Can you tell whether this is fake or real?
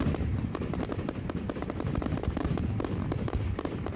fake